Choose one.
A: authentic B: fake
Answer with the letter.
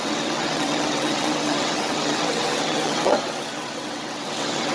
B